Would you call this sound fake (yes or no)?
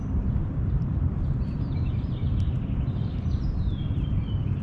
yes